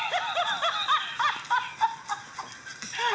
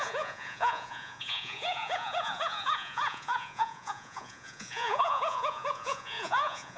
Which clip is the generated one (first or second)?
second